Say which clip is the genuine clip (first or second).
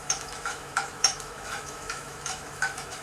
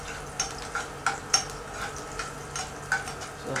second